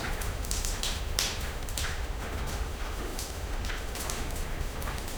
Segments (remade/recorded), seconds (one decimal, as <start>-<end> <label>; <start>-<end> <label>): 0.0-5.2 remade